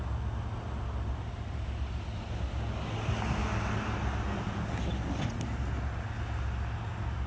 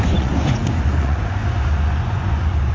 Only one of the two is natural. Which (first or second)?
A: first